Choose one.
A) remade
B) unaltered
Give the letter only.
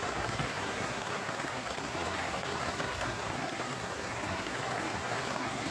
A